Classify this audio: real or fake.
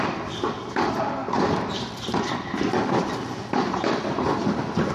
fake